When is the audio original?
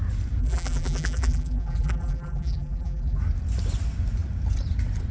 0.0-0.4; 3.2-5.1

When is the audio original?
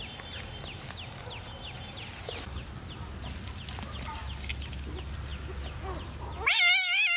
0.0-7.2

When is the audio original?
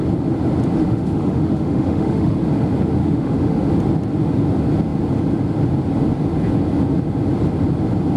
0.0-0.8; 2.4-3.0; 3.7-8.2